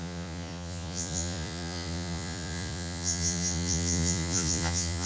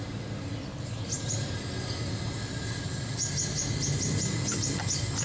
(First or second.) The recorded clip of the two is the second